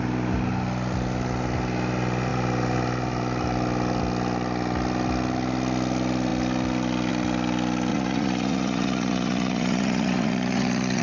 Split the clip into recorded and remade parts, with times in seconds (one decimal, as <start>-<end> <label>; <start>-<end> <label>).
0.0-7.9 recorded; 7.9-11.0 remade